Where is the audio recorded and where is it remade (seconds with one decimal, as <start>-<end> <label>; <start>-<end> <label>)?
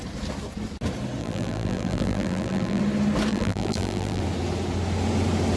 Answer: 0.0-1.2 recorded; 1.2-2.8 remade; 2.8-3.3 recorded; 3.3-4.2 remade; 4.2-5.6 recorded